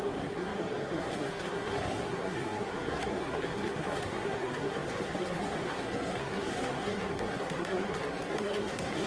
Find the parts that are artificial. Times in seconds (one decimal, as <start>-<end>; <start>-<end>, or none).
0.0-9.1